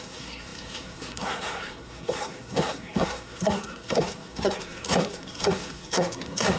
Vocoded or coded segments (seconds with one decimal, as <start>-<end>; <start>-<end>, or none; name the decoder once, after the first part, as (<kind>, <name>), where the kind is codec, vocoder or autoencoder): 0.0-6.6 (codec, SNAC)